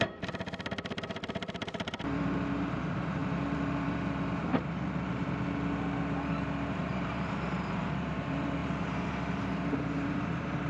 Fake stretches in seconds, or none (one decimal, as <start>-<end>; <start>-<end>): 0.0-4.5; 6.6-10.7